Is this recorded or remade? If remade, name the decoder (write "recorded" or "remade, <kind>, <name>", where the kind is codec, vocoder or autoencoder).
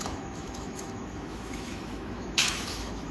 remade, autoencoder, DAC-VAE